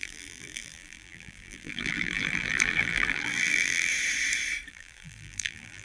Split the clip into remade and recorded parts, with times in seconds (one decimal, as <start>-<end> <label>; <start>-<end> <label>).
0.0-3.9 remade; 3.9-4.7 recorded; 4.7-5.8 remade